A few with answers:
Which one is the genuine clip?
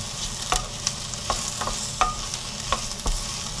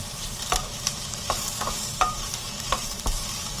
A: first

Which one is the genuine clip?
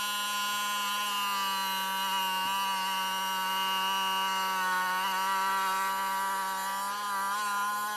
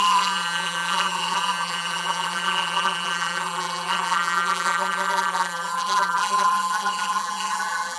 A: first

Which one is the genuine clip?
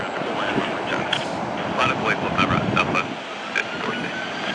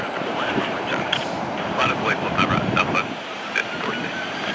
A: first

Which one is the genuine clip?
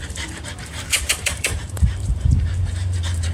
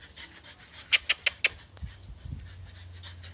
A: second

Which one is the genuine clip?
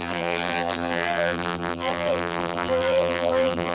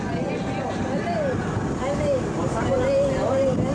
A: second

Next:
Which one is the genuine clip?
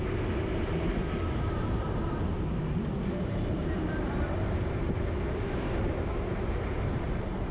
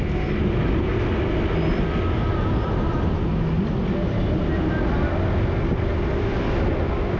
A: second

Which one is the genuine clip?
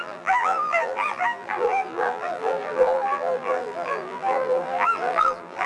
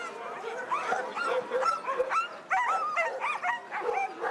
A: second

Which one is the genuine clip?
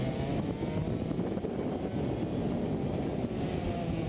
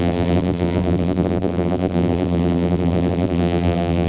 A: first